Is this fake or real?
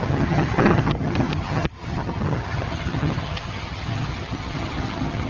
fake